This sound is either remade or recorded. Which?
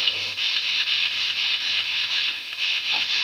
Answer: remade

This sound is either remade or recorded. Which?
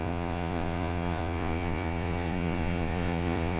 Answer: remade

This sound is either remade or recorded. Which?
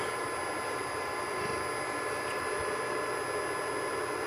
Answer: recorded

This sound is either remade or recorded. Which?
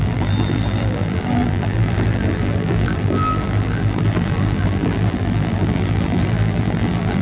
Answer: remade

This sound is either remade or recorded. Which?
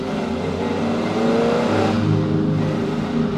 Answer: recorded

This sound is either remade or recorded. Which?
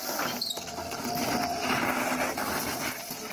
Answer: recorded